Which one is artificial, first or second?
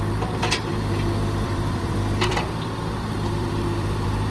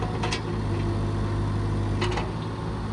first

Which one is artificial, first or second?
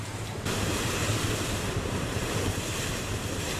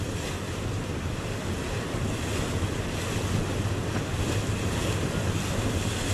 first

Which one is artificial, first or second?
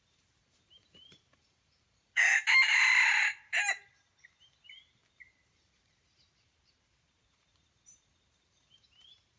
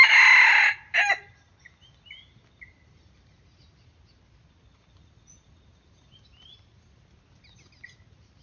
first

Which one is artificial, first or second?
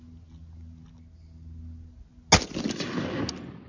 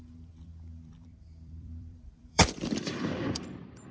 second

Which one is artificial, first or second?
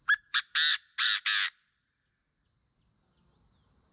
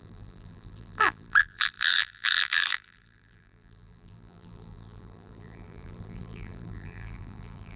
second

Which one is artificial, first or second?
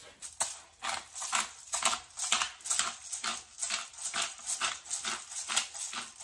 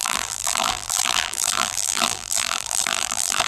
second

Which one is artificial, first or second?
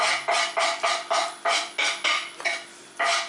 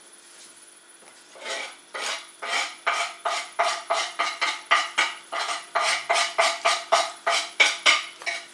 second